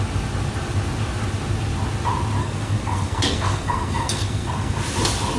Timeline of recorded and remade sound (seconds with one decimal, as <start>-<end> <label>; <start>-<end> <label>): 0.0-2.4 recorded; 2.4-4.8 remade; 4.8-5.4 recorded